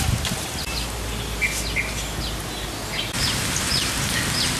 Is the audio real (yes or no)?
yes